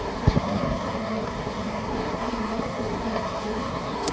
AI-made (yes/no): yes